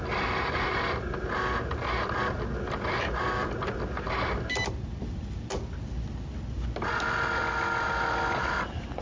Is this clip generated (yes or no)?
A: no